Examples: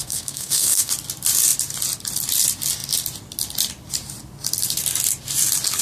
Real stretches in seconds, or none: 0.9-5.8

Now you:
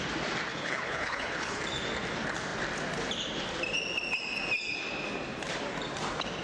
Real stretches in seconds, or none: 0.0-0.5; 1.6-6.4

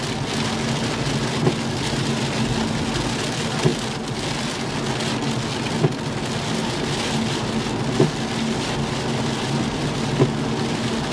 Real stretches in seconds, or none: 0.0-3.7; 4.7-11.1

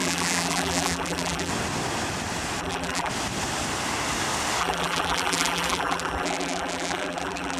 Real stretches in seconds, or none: 1.5-2.6; 3.1-4.6

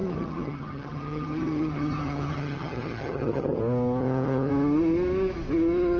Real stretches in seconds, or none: 3.6-4.0; 4.5-6.0

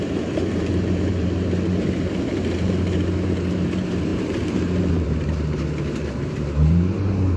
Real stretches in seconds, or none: none